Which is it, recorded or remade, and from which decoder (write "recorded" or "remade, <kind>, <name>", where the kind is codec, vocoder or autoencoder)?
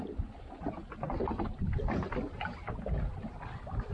recorded